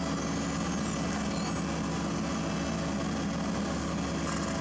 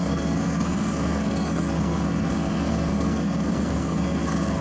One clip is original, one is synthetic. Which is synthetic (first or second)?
second